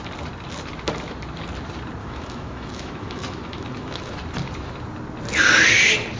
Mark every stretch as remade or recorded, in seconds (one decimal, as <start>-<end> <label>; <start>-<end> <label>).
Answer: 0.0-2.0 recorded; 2.0-4.1 remade; 4.1-6.2 recorded